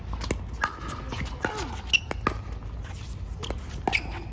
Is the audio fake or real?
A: real